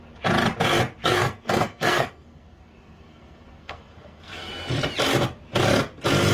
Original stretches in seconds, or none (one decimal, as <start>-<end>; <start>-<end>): 0.0-1.0; 4.5-6.3